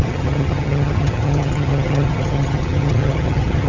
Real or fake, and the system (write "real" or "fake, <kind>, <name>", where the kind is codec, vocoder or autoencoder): fake, vocoder, HiFi-GAN